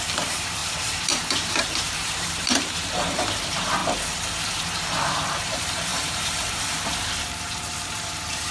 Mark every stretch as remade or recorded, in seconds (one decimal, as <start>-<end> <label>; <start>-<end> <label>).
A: 0.0-3.8 remade; 3.8-4.4 recorded; 4.4-8.5 remade

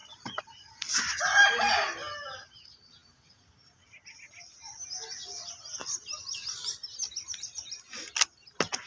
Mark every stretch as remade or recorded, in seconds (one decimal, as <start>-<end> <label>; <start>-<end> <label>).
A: 0.0-1.0 remade; 1.0-8.9 recorded

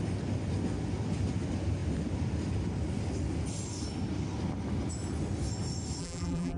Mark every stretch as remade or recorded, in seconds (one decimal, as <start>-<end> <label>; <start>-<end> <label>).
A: 0.0-6.0 recorded; 6.0-6.6 remade